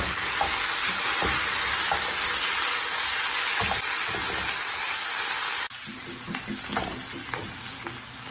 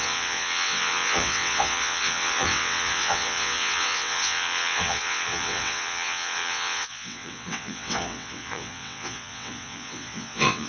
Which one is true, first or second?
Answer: first